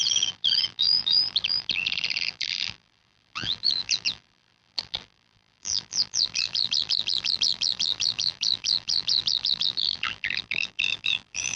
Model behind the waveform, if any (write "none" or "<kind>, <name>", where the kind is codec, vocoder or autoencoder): vocoder, BigVGAN v2